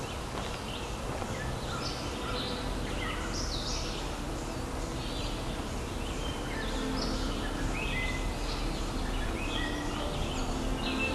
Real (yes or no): yes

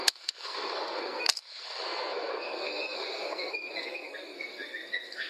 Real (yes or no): no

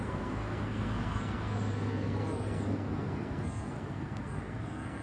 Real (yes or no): no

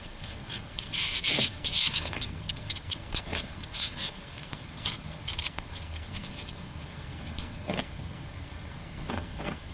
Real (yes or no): no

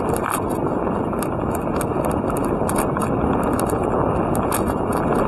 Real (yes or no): yes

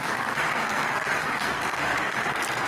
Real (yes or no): no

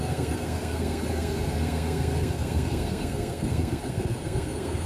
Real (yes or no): no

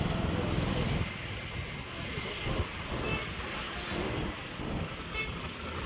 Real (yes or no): yes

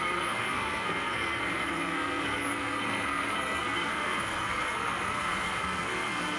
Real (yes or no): no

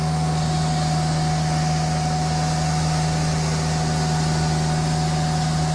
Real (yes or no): yes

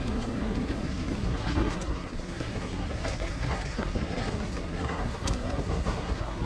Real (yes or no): no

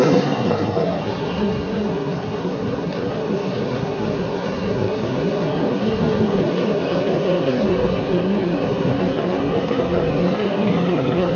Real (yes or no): no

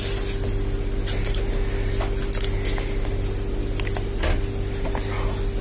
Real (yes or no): yes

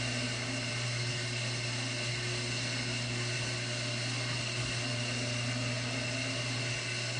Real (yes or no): yes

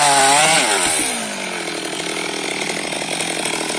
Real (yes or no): yes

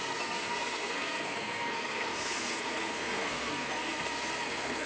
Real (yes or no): no